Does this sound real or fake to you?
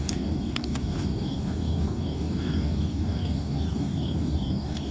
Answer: fake